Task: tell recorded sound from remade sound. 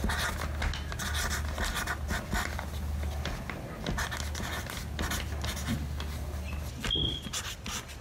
recorded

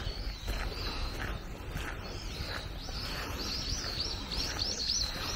recorded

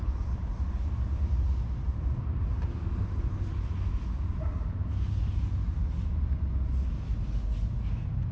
recorded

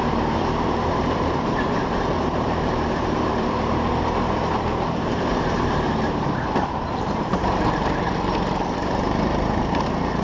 remade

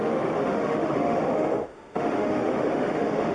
remade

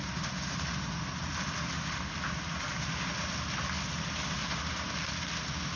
recorded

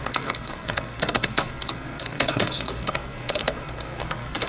remade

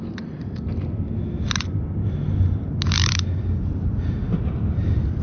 recorded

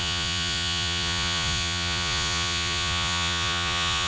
remade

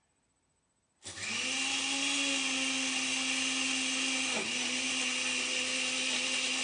recorded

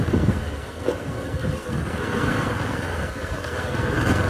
remade